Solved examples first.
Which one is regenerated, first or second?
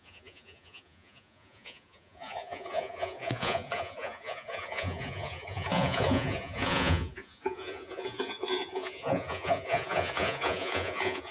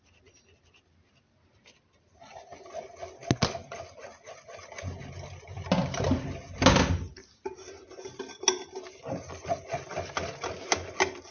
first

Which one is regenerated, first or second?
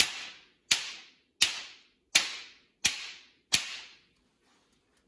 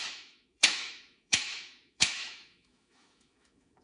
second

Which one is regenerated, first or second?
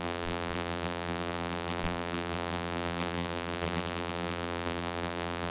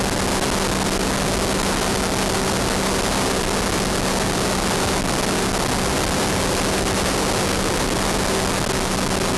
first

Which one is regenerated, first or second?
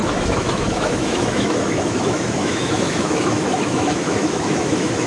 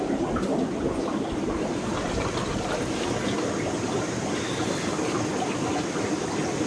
first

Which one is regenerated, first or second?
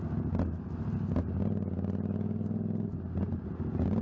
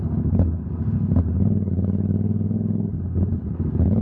second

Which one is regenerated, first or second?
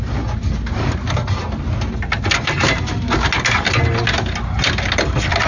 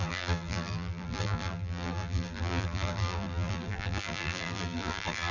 second